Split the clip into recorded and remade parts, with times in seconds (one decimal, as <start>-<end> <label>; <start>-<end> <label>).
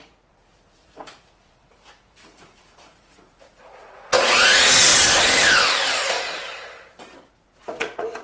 0.0-4.9 remade; 4.9-7.3 recorded; 7.3-8.2 remade